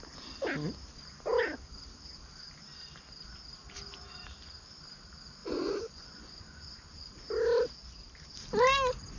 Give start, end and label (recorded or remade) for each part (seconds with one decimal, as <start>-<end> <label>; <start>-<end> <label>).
0.0-5.4 recorded; 5.4-7.1 remade; 7.1-9.2 recorded